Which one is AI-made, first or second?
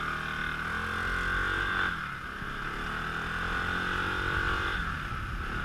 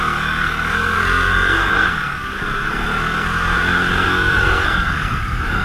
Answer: second